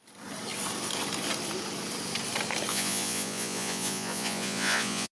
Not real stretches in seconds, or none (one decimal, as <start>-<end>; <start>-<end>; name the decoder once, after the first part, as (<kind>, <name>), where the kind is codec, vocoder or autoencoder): 2.7-5.1 (vocoder, Vocos)